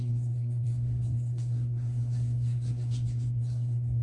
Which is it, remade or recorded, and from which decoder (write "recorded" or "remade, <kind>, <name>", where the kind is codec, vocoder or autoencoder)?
remade, codec, SNAC